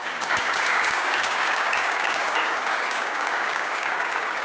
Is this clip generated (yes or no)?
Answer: yes